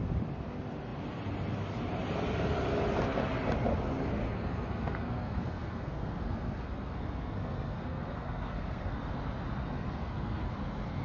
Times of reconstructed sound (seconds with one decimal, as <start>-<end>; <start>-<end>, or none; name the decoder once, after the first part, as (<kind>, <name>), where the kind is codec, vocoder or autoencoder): 4.2-9.0 (codec, SNAC); 9.6-10.5